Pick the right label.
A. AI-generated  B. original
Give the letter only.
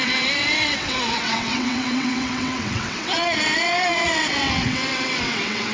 A